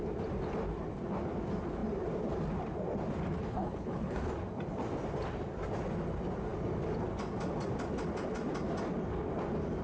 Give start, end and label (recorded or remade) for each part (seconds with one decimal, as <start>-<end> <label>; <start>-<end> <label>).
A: 0.0-3.4 recorded; 3.4-4.3 remade; 4.3-9.8 recorded